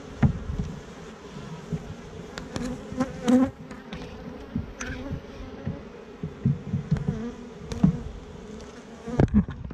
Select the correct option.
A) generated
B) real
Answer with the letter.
B